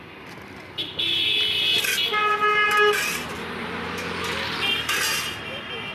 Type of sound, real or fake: real